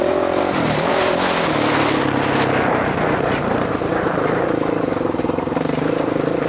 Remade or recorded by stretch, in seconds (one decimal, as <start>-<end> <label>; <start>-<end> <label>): 0.0-0.9 remade; 0.9-3.7 recorded; 3.7-6.5 remade